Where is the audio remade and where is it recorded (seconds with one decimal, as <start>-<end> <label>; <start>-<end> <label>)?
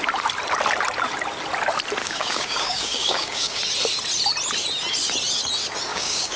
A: 0.0-2.0 recorded; 2.0-3.6 remade; 3.6-5.9 recorded; 5.9-6.4 remade